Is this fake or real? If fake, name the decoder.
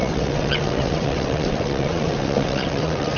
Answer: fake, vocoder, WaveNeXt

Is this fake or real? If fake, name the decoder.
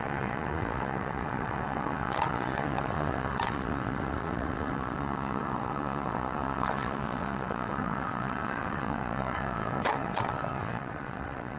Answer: fake, vocoder, WaveNeXt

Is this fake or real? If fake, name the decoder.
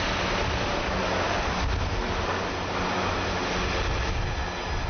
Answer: real